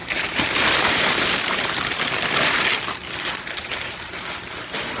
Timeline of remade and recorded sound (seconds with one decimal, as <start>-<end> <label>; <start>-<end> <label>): 0.0-1.7 remade; 1.7-5.0 recorded